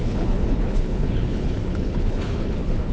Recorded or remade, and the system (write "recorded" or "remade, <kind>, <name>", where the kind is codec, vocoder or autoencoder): remade, codec, HILCodec